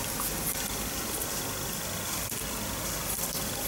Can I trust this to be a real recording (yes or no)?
yes